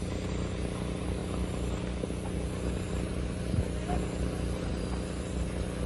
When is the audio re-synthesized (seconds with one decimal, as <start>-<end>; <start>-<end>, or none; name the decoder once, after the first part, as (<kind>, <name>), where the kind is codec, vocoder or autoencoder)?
none